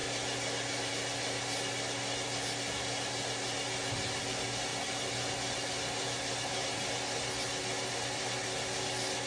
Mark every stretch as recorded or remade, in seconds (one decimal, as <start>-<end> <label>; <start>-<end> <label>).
0.0-9.3 recorded